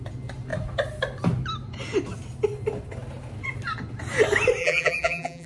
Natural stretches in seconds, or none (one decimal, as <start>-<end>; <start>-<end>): 0.0-4.6

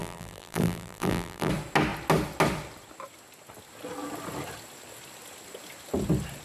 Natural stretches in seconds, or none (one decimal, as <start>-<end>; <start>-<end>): 1.5-6.4

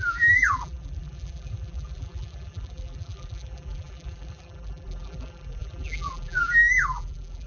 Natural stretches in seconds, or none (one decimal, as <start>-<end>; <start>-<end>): none